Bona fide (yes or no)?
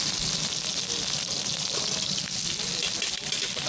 yes